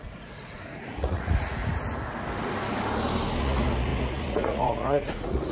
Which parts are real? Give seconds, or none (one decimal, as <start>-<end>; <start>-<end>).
1.6-3.4